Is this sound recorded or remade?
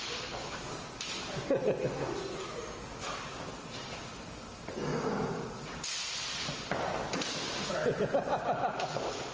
recorded